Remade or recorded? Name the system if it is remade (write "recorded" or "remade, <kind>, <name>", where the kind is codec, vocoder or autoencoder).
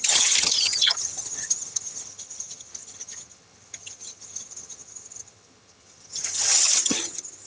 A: remade, vocoder, HiFi-GAN